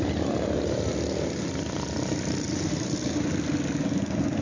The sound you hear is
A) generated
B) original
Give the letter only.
B